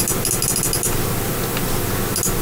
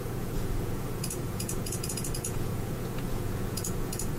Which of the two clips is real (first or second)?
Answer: first